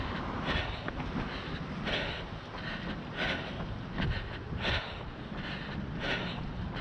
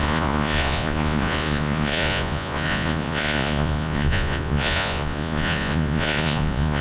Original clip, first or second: first